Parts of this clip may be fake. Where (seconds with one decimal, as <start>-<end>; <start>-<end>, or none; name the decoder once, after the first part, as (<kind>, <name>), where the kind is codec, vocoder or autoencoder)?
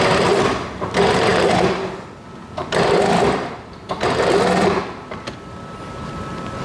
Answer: none